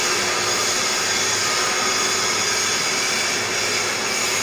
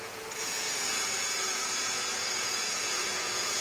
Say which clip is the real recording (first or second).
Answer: first